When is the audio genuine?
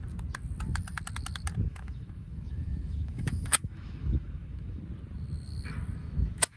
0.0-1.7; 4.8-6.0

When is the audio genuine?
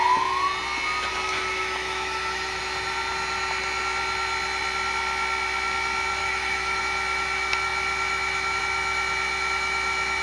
0.0-1.1; 2.6-6.2; 6.8-10.2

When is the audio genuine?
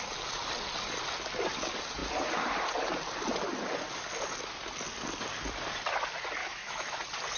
0.0-6.4; 7.0-7.4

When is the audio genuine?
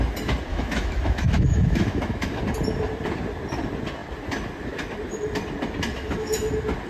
0.0-0.5; 2.4-5.9; 6.5-6.9